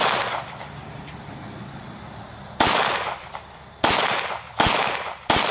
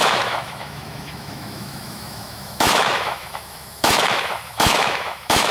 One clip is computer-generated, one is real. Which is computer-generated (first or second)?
second